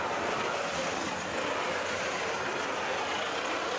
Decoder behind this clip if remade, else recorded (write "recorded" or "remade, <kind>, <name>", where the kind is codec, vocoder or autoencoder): recorded